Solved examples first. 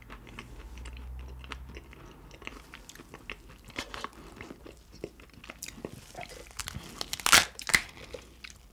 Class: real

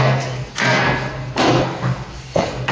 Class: fake